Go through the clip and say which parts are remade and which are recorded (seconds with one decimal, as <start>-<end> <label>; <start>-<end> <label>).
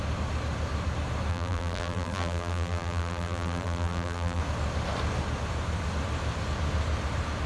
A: 0.0-1.3 recorded; 1.3-4.4 remade; 4.4-7.5 recorded